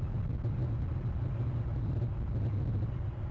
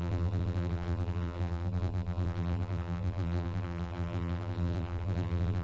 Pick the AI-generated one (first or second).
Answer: second